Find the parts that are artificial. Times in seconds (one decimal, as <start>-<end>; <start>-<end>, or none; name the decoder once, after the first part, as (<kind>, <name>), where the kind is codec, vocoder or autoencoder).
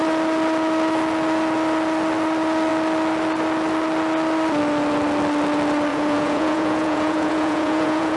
5.9-8.2 (vocoder, Vocos)